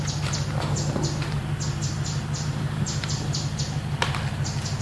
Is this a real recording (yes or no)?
yes